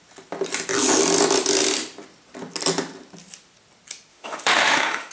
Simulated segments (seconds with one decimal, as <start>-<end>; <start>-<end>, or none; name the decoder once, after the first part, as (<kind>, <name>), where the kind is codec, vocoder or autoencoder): 4.1-5.1 (autoencoder, DAC-VAE)